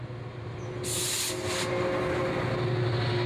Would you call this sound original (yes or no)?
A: yes